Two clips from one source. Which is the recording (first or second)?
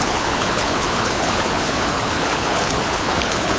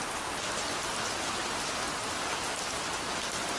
second